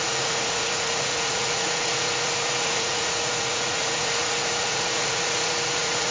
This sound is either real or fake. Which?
fake